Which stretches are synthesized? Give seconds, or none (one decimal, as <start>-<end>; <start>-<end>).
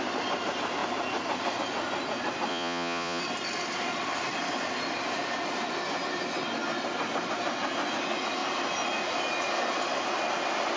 2.5-3.2